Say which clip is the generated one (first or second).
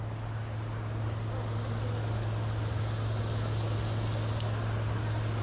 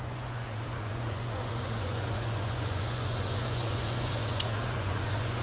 second